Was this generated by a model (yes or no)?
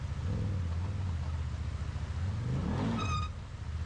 no